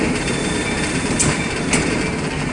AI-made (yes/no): yes